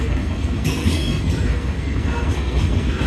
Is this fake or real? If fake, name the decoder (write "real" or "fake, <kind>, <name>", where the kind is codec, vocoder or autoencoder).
fake, codec, SNAC